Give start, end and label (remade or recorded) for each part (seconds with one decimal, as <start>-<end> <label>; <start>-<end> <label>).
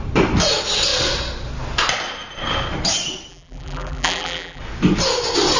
0.0-3.3 recorded; 3.3-4.6 remade; 4.6-5.6 recorded